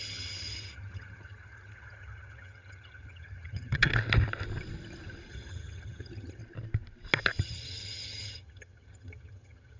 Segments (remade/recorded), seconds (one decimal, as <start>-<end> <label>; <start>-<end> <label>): 0.0-3.9 remade; 3.9-5.3 recorded; 5.3-6.4 remade; 6.4-7.4 recorded; 7.4-9.8 remade